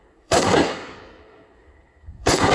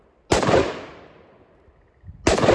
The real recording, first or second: second